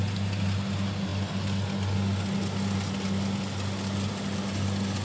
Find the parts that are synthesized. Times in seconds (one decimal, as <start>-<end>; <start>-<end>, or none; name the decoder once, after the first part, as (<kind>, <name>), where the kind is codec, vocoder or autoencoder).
none